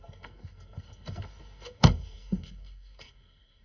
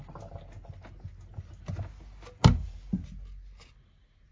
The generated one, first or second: first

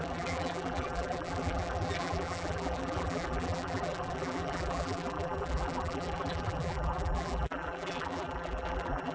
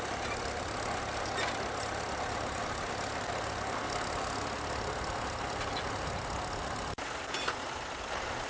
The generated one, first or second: first